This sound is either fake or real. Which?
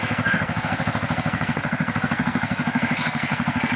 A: fake